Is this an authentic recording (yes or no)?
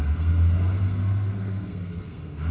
no